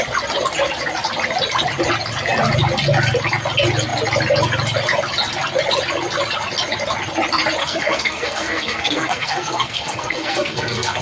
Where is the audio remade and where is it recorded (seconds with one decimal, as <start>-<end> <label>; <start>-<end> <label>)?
0.0-7.6 recorded; 7.6-11.0 remade